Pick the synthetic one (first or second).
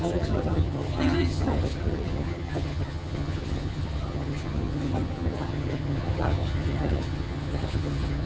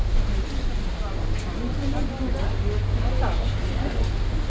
first